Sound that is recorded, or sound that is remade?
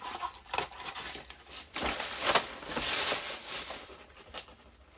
recorded